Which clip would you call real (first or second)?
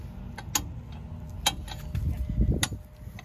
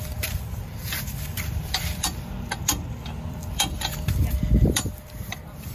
first